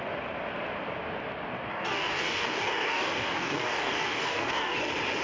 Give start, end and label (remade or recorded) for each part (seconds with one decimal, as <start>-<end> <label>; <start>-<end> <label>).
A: 0.0-1.7 recorded; 1.7-4.8 remade; 4.8-5.2 recorded